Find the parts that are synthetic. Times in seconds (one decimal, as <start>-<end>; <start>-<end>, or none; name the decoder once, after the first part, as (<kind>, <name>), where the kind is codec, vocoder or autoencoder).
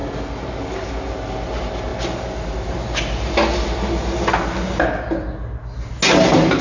none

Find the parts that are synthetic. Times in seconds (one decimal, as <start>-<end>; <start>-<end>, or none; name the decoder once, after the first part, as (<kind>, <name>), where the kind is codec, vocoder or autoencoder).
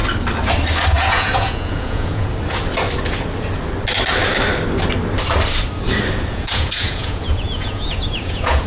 0.9-2.3 (vocoder, Vocos); 6.3-8.7